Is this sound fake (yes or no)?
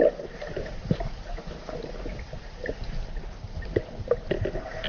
no